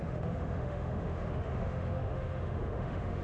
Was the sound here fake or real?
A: fake